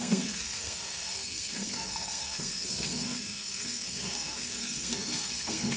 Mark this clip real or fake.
fake